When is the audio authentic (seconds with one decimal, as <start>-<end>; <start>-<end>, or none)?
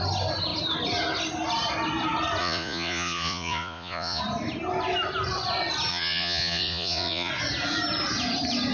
0.0-2.4; 4.2-5.9; 7.3-8.7